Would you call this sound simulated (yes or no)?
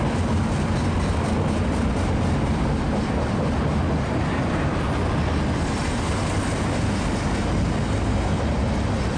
no